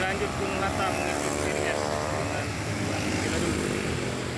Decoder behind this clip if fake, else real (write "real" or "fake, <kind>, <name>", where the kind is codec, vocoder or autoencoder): real